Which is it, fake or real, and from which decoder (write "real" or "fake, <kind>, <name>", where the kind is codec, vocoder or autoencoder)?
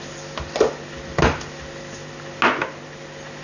real